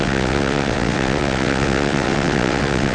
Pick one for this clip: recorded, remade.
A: remade